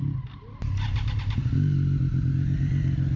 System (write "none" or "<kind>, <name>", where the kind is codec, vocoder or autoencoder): none